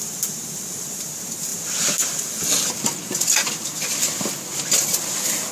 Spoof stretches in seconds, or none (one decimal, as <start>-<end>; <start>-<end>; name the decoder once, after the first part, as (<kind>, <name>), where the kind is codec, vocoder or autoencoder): none